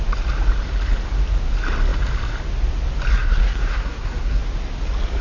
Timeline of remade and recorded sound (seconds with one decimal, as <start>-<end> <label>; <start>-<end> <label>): 0.0-3.1 recorded; 3.1-4.4 remade; 4.4-5.2 recorded